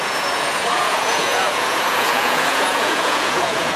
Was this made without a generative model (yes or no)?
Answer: no